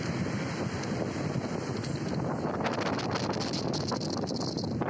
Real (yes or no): yes